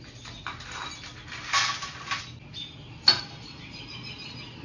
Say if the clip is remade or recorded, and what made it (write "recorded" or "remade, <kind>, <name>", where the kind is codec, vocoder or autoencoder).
recorded